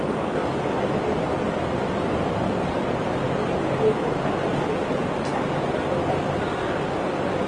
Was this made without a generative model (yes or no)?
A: yes